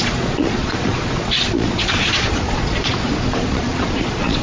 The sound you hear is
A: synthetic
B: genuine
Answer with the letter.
A